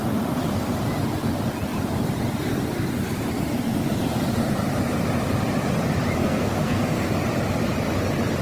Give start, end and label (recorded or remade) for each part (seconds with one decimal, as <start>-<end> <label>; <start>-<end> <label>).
0.0-6.2 recorded; 6.2-7.1 remade; 7.1-8.4 recorded